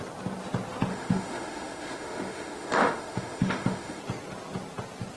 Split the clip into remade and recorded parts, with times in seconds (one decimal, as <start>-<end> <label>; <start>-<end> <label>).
0.0-0.9 recorded; 0.9-4.0 remade; 4.0-5.2 recorded